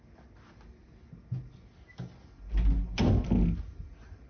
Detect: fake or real real